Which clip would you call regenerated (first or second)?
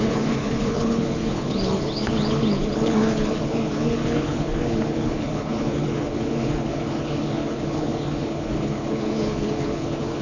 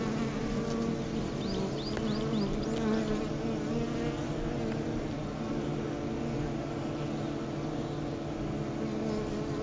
first